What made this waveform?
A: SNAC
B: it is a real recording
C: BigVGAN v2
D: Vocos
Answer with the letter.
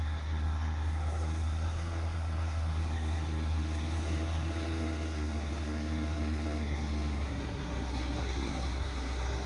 A